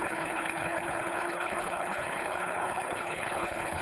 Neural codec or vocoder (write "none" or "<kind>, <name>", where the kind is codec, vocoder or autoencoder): codec, HILCodec